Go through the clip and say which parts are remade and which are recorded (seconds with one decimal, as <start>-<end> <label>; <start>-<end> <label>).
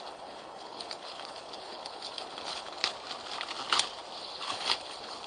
0.0-2.8 remade; 2.8-4.2 recorded; 4.2-5.3 remade